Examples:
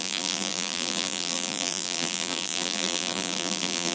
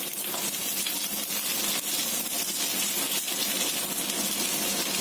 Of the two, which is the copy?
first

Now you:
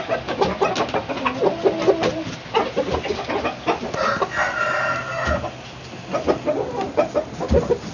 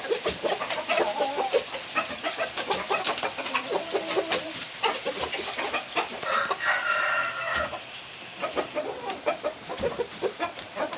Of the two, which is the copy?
second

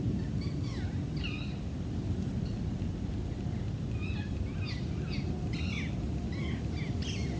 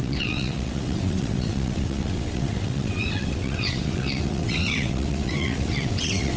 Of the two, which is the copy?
second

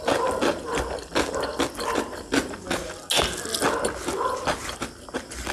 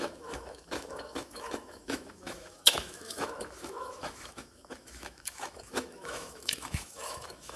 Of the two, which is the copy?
second